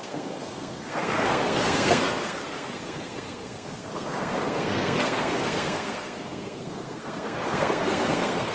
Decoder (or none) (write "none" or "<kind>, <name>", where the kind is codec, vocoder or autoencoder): codec, SNAC